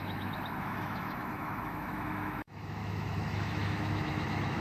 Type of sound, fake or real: fake